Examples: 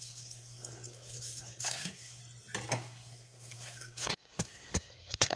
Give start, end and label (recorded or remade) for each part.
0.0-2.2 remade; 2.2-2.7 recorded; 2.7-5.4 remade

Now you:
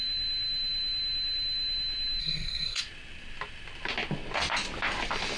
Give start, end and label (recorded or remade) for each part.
0.0-2.2 recorded; 2.2-2.8 remade; 2.8-5.4 recorded